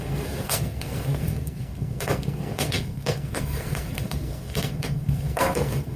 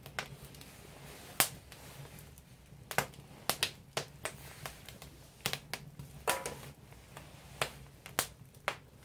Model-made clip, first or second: first